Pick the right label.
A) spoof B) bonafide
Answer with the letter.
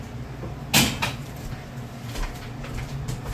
B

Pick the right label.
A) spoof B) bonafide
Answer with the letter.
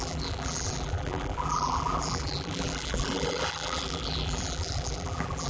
A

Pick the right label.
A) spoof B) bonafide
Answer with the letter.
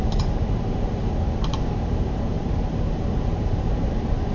A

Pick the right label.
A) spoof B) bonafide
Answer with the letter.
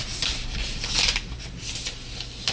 B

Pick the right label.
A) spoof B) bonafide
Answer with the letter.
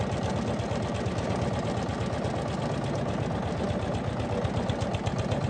B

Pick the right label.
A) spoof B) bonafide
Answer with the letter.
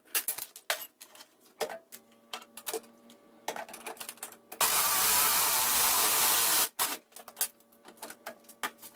B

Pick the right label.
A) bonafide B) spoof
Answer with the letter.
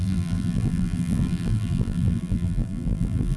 B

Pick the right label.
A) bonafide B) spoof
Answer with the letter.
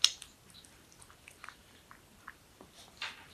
B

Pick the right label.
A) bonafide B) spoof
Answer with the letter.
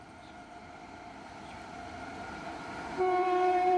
B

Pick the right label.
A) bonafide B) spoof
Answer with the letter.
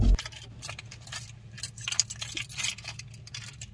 A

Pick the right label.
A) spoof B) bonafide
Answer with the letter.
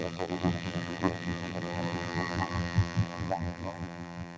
A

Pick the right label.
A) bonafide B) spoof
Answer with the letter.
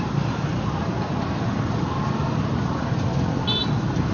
A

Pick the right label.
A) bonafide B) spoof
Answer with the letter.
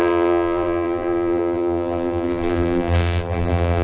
B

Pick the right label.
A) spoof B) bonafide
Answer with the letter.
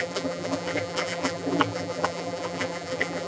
A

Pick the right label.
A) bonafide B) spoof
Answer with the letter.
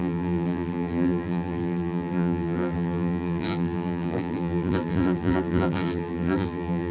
B